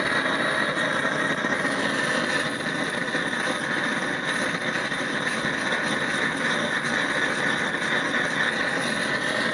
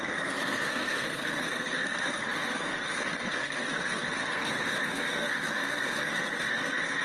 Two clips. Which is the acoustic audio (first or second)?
first